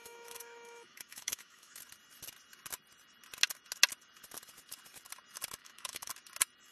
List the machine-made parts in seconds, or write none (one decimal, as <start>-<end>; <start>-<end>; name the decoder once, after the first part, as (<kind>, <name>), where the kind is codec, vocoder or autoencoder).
0.0-1.8 (autoencoder, DAC-VAE); 5.6-6.1